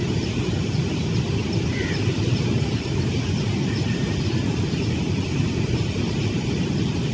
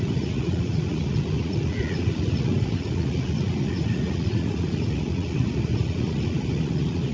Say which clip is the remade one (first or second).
second